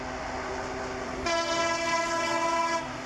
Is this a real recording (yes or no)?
yes